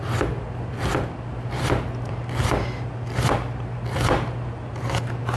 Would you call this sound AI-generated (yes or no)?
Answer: no